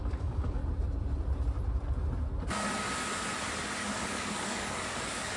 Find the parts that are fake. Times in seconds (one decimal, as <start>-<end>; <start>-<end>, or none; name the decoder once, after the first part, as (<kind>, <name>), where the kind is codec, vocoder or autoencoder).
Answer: 0.0-0.6 (codec, DAC); 3.8-5.4